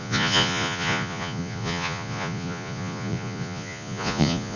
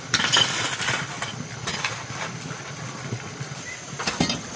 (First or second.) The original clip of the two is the second